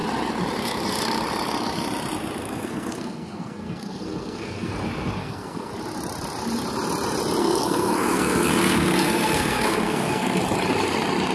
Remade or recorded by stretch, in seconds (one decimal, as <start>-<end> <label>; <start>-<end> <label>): 0.0-2.4 recorded; 2.4-4.7 remade; 4.7-5.2 recorded; 5.2-5.7 remade; 5.7-7.4 recorded; 7.4-10.4 remade; 10.4-11.3 recorded